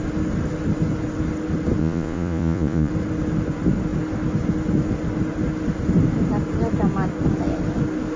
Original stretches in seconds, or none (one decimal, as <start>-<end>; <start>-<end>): 0.0-1.8; 2.9-8.2